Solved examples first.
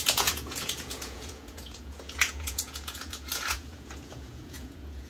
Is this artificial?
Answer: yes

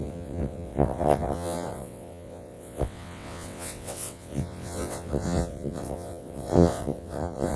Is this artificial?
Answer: yes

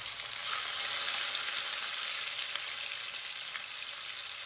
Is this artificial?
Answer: no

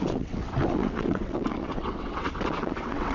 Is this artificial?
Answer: yes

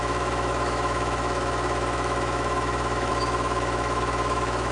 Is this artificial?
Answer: yes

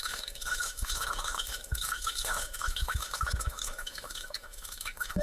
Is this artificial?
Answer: yes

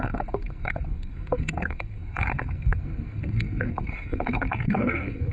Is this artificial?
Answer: yes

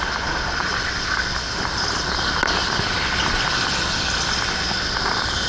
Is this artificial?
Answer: no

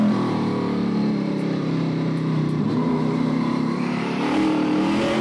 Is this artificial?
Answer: yes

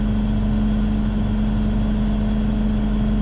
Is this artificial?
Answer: no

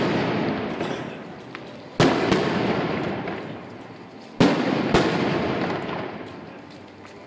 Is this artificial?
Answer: no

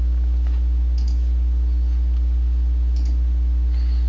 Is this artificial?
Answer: no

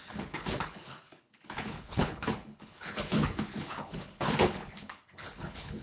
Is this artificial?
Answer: yes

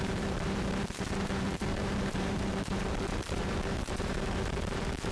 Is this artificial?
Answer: yes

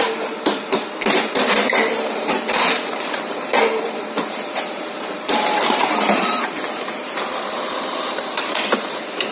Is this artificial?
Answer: yes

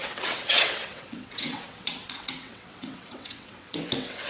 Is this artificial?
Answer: yes